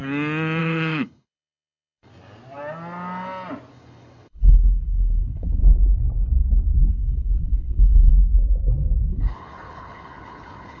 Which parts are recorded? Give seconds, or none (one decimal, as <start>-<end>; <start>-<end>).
0.0-0.6; 2.1-3.7; 5.6-6.9; 8.1-9.1

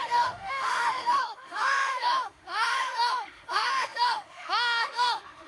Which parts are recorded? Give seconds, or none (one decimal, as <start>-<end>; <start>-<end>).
none